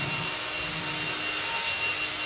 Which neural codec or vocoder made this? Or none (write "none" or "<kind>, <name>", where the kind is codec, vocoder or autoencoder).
none